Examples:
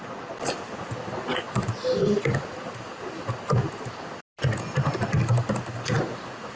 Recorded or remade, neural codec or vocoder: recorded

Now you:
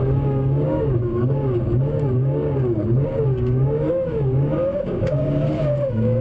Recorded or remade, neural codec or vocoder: remade, codec, DAC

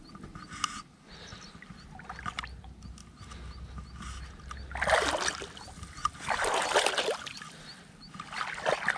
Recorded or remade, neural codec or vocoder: recorded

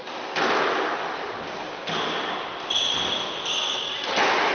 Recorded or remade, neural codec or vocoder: recorded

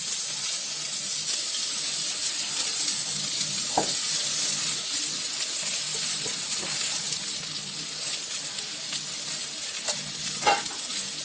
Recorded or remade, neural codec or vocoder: recorded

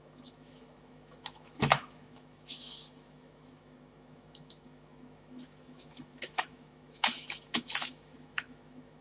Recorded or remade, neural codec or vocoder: remade, autoencoder, DAC-VAE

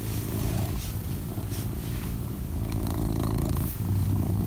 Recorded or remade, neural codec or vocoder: remade, codec, DAC